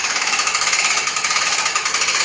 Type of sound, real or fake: fake